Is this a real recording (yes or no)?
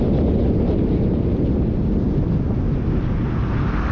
yes